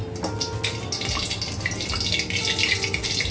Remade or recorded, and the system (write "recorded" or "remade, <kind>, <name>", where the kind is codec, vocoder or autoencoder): recorded